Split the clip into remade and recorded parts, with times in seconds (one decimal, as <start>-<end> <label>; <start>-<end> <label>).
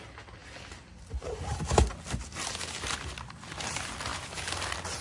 0.0-5.0 recorded